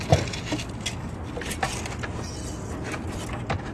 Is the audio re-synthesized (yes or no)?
no